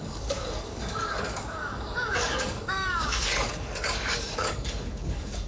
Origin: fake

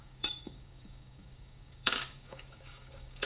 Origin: fake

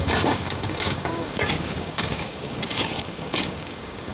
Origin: fake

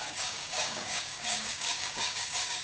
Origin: fake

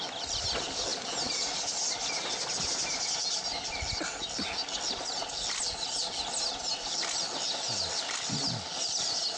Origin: real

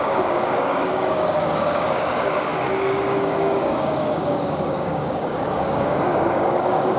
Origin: fake